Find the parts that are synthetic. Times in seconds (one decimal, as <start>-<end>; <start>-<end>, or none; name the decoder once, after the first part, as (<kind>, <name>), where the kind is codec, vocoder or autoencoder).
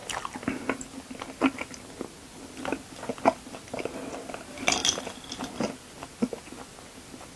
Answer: none